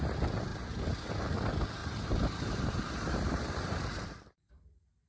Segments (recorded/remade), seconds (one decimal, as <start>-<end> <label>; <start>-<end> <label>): 0.0-1.8 recorded; 1.8-5.1 remade